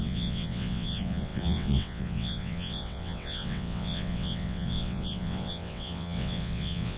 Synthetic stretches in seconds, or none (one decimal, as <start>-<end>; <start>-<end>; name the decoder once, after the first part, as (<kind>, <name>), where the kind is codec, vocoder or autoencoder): 0.0-7.0 (vocoder, WaveNeXt)